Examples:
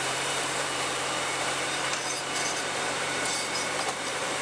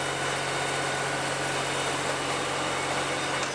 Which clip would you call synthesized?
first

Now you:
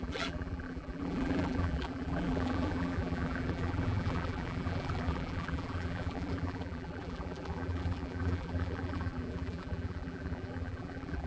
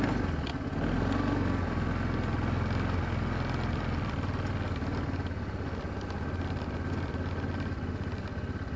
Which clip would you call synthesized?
first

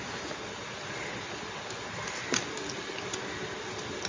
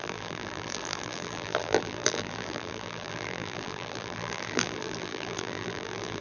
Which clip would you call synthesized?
second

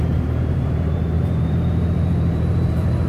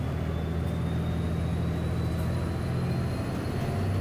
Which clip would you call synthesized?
first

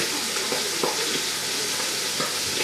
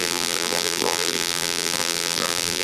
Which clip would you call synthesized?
second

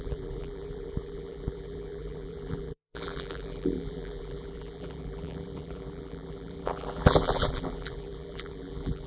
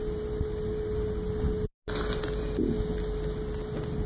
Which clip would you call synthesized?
first